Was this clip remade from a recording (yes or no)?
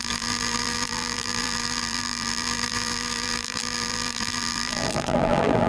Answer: yes